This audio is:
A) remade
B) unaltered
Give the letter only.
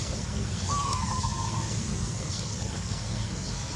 A